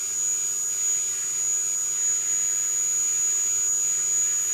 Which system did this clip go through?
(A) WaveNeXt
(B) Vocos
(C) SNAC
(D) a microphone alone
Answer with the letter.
D